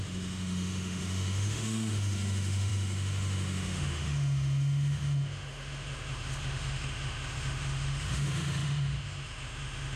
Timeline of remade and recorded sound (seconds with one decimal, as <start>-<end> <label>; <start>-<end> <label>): 0.0-10.0 remade

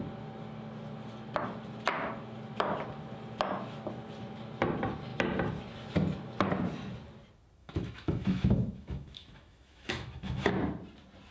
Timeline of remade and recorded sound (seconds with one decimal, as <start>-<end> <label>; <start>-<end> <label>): 0.0-7.6 recorded; 7.6-10.5 remade; 10.5-11.3 recorded

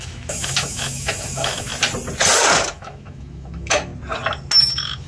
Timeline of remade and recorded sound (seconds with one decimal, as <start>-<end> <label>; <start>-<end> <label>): 0.0-1.7 remade; 1.7-2.7 recorded; 2.7-3.9 remade; 3.9-4.6 recorded; 4.6-5.1 remade

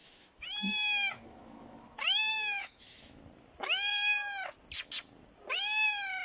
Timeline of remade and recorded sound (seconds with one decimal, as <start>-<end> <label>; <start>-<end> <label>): 0.0-3.2 remade; 3.2-6.2 recorded

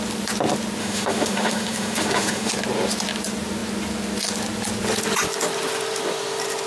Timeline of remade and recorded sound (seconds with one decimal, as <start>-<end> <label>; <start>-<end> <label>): 0.0-0.8 recorded; 0.8-2.5 remade; 2.5-6.7 recorded

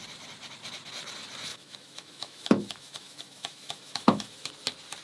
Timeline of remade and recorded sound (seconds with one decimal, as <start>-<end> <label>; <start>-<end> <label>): 0.0-1.5 recorded; 1.5-4.5 remade; 4.5-5.0 recorded

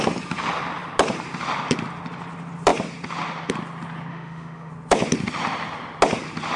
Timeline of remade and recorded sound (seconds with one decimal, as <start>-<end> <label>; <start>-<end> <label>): 0.0-4.1 recorded; 4.1-4.7 remade; 4.7-6.6 recorded

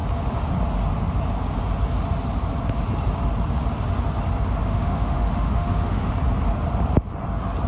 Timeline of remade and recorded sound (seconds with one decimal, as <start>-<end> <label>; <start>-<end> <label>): 0.0-4.7 recorded; 4.7-6.1 remade; 6.1-7.7 recorded